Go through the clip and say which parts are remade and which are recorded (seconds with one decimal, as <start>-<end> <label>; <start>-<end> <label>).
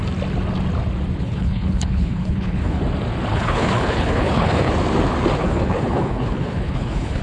0.0-1.2 recorded; 1.2-2.8 remade; 2.8-3.3 recorded; 3.3-4.7 remade; 4.7-5.4 recorded; 5.4-7.2 remade